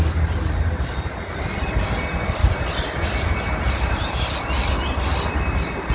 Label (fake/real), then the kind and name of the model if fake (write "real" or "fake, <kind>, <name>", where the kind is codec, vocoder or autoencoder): fake, vocoder, BigVGAN v2